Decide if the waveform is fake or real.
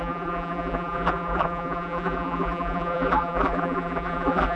fake